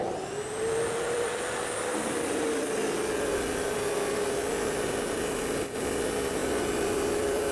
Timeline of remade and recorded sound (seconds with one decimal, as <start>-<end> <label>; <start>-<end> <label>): 0.0-7.5 recorded